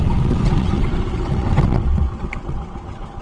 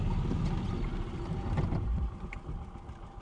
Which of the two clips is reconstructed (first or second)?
first